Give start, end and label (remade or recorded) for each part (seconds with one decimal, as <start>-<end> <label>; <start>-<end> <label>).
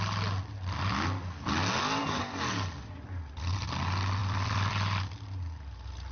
0.0-4.2 recorded; 4.2-5.0 remade; 5.0-6.1 recorded